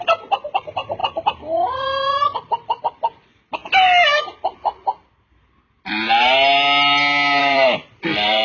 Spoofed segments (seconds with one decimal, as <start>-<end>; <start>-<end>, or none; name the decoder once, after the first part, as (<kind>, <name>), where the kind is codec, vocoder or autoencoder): 0.0-3.6 (vocoder, BigVGAN v2); 7.4-8.4